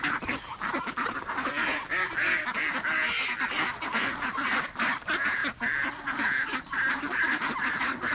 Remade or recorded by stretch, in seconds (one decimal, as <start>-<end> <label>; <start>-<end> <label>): 0.0-1.5 remade; 1.5-4.7 recorded; 4.7-5.4 remade; 5.4-6.9 recorded; 6.9-8.1 remade